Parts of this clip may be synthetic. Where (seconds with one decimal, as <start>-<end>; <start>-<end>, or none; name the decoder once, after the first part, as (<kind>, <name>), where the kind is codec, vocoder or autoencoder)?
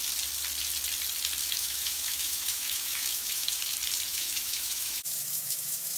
1.4-3.6 (autoencoder, DAC-VAE); 4.1-6.0